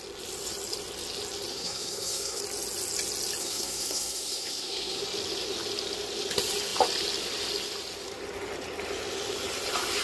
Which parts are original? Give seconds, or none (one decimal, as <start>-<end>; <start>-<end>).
0.0-1.5; 2.4-3.4; 5.0-10.0